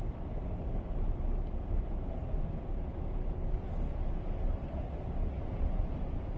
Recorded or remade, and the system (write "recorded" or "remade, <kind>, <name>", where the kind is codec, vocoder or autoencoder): recorded